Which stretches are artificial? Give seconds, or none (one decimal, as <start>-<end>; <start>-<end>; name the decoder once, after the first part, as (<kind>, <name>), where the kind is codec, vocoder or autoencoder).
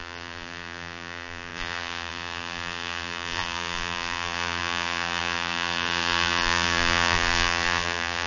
0.0-8.3 (vocoder, BigVGAN v2)